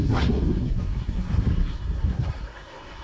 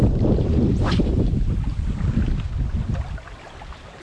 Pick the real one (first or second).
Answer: second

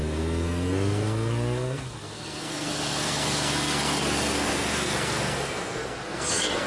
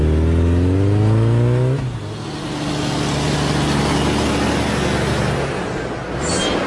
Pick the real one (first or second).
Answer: second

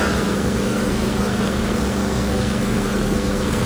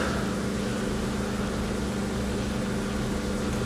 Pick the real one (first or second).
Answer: second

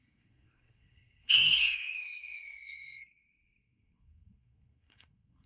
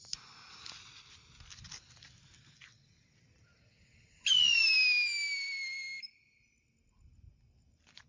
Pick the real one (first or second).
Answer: second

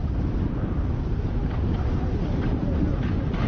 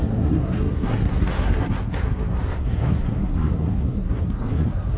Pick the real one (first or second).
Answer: first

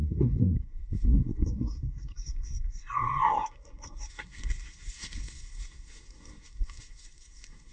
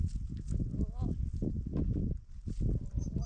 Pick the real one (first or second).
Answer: second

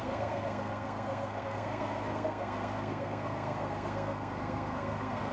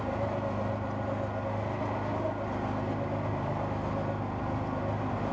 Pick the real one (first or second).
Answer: second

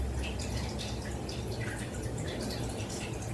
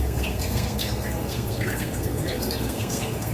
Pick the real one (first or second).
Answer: first